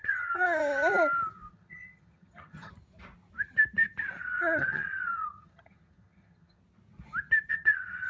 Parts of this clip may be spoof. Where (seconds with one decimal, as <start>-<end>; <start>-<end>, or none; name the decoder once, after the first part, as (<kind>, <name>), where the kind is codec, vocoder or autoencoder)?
0.0-0.6 (vocoder, HiFi-GAN); 1.5-2.7; 4.2-6.6; 7.5-8.1